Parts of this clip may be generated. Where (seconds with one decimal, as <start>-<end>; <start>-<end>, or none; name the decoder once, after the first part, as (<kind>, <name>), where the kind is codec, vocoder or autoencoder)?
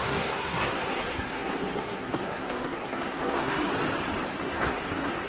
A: 0.0-3.7 (codec, SNAC); 4.3-5.3